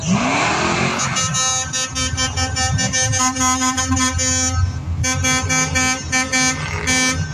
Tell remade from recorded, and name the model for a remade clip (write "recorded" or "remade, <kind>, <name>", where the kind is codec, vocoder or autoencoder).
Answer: recorded